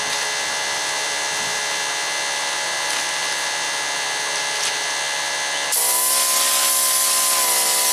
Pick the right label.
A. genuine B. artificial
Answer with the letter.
A